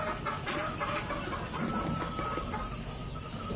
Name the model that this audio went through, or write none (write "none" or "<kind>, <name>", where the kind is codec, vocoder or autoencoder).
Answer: none